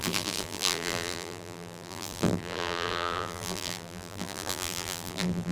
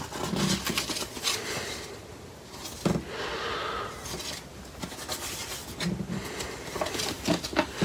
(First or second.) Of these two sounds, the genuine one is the second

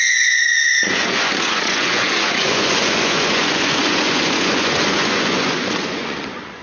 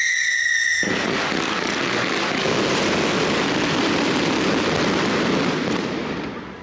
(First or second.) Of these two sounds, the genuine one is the second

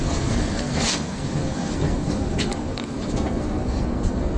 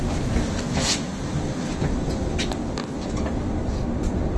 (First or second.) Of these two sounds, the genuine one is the second